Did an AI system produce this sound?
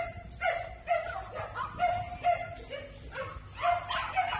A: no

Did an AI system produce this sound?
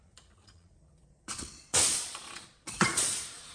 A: yes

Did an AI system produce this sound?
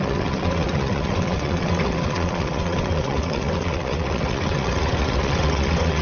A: yes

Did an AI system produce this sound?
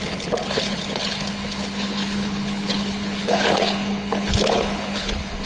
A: yes